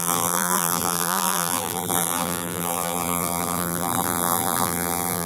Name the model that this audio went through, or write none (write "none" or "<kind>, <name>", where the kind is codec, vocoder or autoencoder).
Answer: vocoder, BigVGAN v2